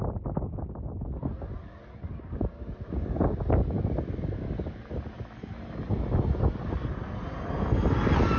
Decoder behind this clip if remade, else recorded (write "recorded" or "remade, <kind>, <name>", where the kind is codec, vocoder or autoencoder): recorded